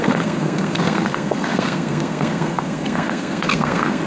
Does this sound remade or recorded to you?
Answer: remade